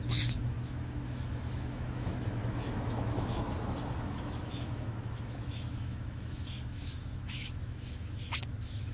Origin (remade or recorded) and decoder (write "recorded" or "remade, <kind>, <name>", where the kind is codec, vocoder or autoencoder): remade, autoencoder, DAC-VAE